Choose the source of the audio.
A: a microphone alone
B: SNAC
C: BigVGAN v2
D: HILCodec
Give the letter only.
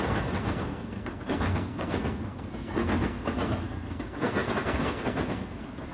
B